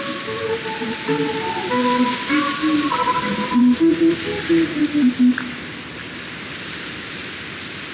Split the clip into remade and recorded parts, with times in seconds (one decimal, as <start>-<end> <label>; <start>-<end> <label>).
0.0-2.6 recorded; 2.6-3.6 remade; 3.6-4.3 recorded; 4.3-4.8 remade; 4.8-5.9 recorded; 5.9-7.3 remade; 7.3-7.9 recorded